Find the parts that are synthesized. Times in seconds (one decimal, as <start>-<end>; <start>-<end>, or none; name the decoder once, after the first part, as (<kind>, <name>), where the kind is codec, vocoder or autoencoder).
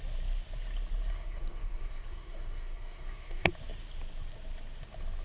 1.1-3.5 (codec, SNAC)